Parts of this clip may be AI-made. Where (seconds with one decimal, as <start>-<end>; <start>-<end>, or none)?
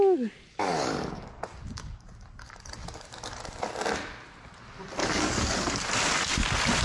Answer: 0.5-3.6; 5.0-5.9